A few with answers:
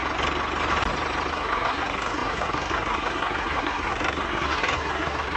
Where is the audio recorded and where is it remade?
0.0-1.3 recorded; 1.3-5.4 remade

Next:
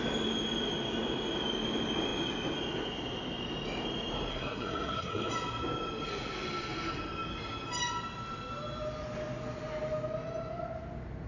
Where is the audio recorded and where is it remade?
0.0-4.3 recorded; 4.3-5.3 remade; 5.3-11.3 recorded

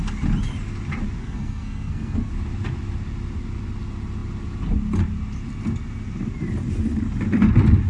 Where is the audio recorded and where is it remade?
0.0-1.2 recorded; 1.2-2.3 remade; 2.3-7.9 recorded

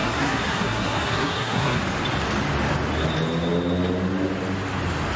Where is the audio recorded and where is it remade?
0.0-1.8 remade; 1.8-5.2 recorded

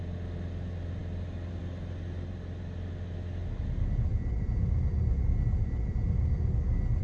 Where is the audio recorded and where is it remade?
0.0-7.0 recorded

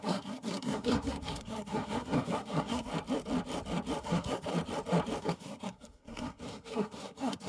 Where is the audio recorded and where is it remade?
0.0-2.9 remade; 2.9-4.0 recorded; 4.0-4.5 remade; 4.5-5.2 recorded; 5.2-7.5 remade

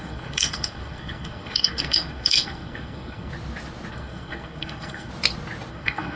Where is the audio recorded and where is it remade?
0.0-3.3 remade; 3.3-3.9 recorded; 3.9-5.1 remade; 5.1-5.7 recorded; 5.7-6.2 remade